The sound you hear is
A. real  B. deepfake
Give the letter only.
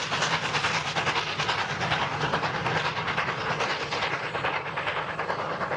A